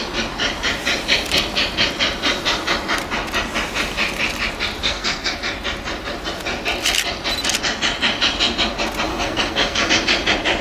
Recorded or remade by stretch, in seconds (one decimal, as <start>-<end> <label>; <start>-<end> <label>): 0.0-4.8 recorded; 4.8-5.3 remade; 5.3-9.1 recorded; 9.1-9.9 remade; 9.9-10.6 recorded